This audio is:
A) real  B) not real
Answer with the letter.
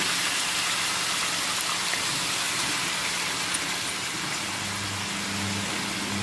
A